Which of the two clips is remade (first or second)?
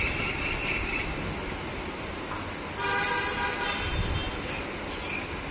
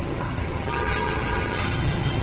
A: second